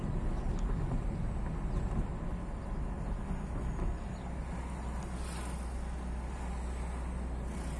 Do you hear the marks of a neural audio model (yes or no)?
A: no